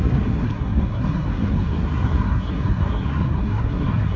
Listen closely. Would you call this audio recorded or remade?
remade